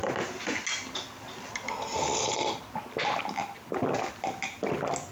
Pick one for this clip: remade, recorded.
recorded